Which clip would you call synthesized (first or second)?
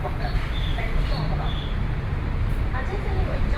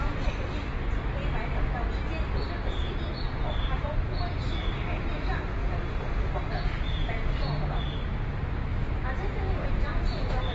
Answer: first